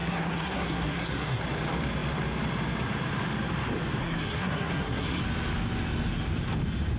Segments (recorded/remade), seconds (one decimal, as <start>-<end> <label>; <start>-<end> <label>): 0.0-1.4 remade; 1.4-4.0 recorded; 4.0-5.2 remade; 5.2-7.0 recorded

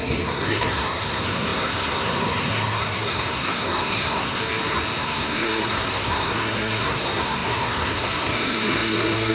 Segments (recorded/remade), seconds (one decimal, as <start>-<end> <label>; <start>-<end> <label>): 0.0-4.4 remade; 4.4-5.0 recorded; 5.0-9.3 remade

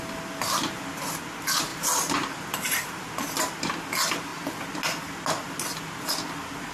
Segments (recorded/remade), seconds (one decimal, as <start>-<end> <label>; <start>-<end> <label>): 0.0-6.7 recorded

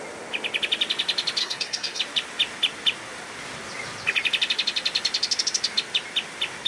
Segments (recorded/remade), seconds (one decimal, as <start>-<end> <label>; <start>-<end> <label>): 0.0-1.4 recorded; 1.4-2.0 remade; 2.0-6.7 recorded